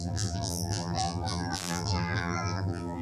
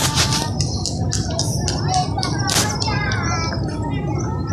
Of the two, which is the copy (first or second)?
first